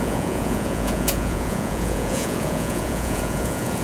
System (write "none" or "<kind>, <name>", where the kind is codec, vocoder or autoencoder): vocoder, Vocos